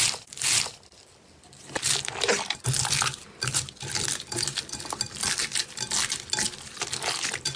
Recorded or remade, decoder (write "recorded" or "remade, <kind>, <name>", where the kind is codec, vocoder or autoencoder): recorded